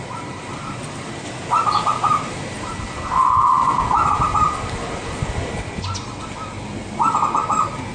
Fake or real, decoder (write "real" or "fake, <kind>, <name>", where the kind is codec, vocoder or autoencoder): real